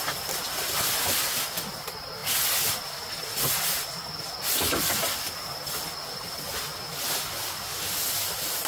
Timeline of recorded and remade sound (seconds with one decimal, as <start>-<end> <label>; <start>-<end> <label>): 0.0-8.7 recorded